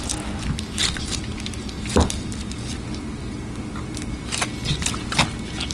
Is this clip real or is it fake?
real